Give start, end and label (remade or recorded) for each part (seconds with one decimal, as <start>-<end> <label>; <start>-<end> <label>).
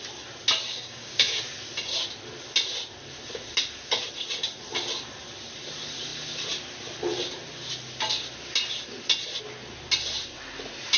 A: 0.0-0.7 recorded; 0.7-1.4 remade; 1.4-11.0 recorded